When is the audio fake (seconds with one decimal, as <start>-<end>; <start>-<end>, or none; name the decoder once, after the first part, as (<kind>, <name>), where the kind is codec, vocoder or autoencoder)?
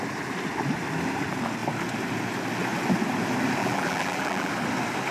3.6-4.5 (vocoder, BigVGAN v2)